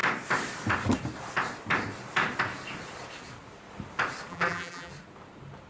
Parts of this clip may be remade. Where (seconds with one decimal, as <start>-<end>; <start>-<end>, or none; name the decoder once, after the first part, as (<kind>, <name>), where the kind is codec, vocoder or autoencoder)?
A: 4.3-4.9 (vocoder, BigVGAN v2)